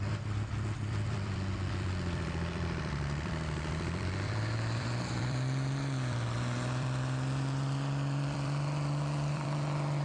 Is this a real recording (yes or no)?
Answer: no